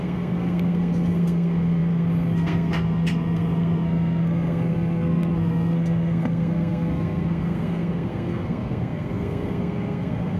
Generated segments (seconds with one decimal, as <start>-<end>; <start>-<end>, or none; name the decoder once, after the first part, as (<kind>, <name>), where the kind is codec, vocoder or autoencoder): 0.0-10.4 (codec, SNAC)